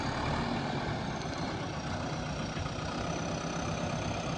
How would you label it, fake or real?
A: real